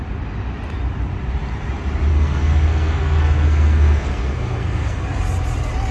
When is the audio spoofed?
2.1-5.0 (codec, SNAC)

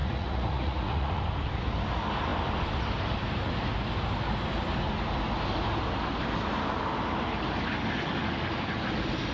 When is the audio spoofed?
0.0-1.2 (vocoder, Vocos)

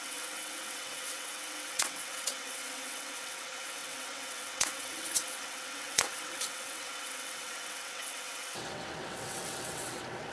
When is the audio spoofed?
0.0-10.3 (vocoder, WaveNeXt)